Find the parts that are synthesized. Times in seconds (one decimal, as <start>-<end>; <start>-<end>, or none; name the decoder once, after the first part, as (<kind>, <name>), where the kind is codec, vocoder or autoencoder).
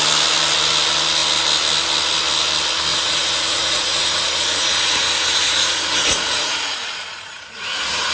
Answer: 2.9-8.1 (vocoder, Vocos)